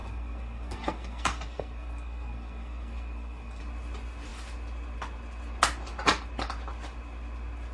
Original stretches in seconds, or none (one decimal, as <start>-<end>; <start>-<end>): 3.6-7.7